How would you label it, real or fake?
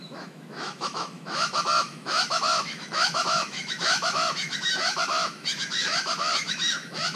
fake